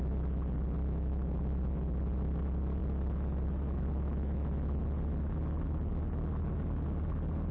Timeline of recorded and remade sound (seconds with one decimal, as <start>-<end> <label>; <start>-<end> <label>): 0.0-7.5 recorded